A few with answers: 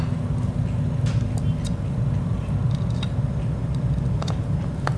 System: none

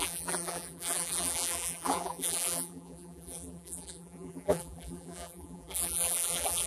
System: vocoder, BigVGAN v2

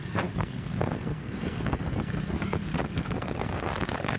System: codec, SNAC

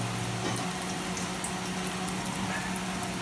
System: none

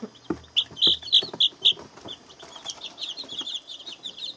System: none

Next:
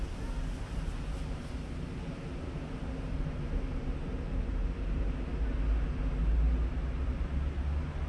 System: none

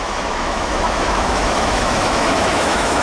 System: autoencoder, DAC-VAE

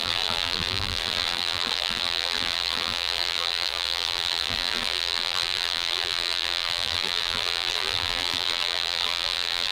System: vocoder, BigVGAN v2